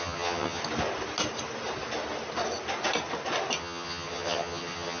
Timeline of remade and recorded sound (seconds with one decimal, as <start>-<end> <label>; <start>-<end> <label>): 0.0-0.6 remade; 0.6-3.6 recorded; 3.6-5.0 remade